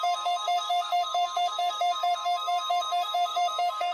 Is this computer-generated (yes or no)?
yes